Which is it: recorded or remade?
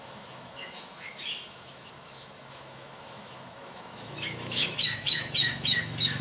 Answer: remade